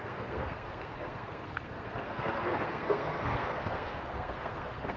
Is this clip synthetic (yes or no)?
yes